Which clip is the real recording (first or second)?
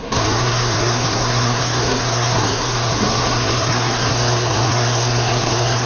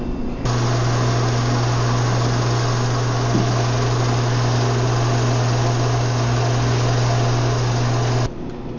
second